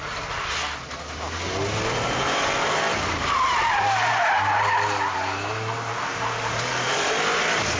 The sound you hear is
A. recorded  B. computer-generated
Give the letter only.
A